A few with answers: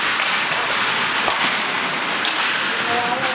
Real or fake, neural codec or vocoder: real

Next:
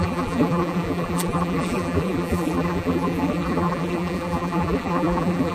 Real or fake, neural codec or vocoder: fake, vocoder, BigVGAN v2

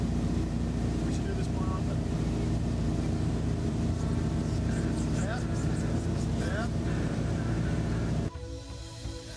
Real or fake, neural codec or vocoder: fake, vocoder, BigVGAN v2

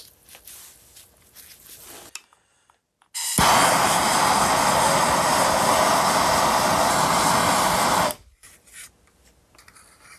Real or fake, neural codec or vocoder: real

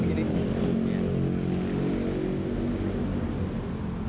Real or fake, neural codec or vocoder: real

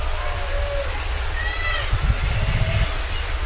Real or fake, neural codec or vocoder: real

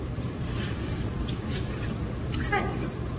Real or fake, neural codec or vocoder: fake, vocoder, BigVGAN v2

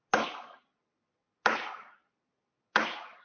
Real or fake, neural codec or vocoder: real